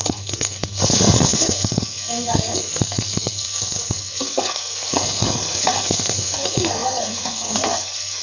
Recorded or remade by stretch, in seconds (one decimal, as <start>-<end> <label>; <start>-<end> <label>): 0.0-8.2 remade